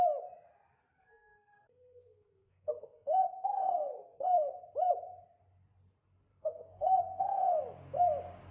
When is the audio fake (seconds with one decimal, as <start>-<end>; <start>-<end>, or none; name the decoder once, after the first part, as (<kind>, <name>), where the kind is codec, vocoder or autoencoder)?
1.0-4.6 (codec, SNAC); 6.3-7.6